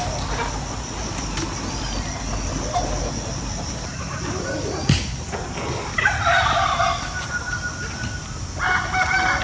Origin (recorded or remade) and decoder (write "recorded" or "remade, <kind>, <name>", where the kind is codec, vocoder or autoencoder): recorded